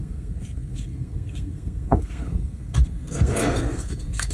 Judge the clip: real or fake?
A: fake